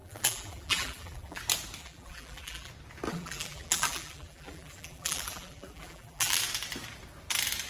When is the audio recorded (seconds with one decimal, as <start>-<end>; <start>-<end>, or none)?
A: 1.4-1.8; 2.7-3.1; 6.4-7.7